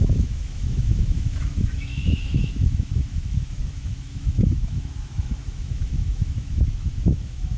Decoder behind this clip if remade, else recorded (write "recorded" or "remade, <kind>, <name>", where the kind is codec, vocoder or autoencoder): remade, autoencoder, DAC-VAE